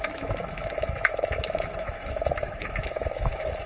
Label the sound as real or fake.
fake